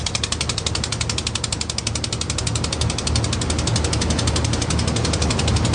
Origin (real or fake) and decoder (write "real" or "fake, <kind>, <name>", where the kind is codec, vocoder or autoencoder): real